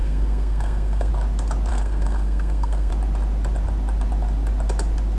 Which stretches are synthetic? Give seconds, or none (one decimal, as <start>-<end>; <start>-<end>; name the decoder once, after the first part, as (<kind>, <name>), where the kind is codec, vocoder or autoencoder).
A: 0.0-1.1 (codec, SNAC); 1.7-2.9

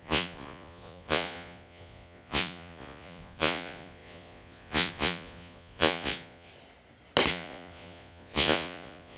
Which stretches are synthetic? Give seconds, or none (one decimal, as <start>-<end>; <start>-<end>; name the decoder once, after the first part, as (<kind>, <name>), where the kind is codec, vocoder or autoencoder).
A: 0.0-6.5 (vocoder, Vocos); 7.3-9.2

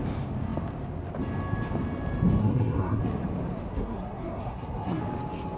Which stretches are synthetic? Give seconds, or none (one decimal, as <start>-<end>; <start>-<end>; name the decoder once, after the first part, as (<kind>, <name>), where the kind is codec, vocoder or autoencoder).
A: 2.4-3.0 (codec, SNAC); 3.7-5.0

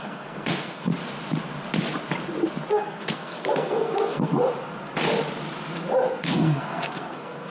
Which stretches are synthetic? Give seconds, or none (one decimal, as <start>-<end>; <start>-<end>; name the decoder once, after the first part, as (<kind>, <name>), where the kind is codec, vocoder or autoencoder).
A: 0.0-0.9 (codec, SNAC); 2.7-4.3; 6.1-7.5

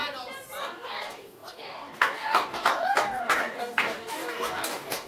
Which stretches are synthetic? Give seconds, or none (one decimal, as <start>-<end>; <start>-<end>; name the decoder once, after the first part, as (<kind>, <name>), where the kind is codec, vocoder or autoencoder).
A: 0.6-5.1 (codec, DAC)

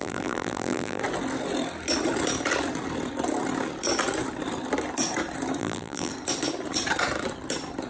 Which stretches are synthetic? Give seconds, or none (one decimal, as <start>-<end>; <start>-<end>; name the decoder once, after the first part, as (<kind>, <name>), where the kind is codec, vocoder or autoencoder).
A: 0.0-1.0 (vocoder, BigVGAN v2); 5.6-6.1